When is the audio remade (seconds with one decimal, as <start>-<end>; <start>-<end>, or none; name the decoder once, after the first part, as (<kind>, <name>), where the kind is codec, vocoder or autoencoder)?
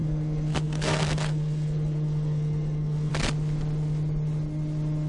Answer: 0.0-3.1 (codec, SNAC)